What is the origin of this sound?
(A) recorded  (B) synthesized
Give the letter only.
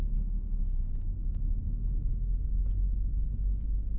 A